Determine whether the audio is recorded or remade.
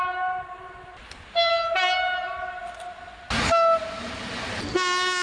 recorded